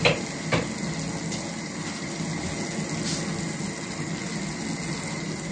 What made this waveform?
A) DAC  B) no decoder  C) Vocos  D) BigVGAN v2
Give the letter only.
B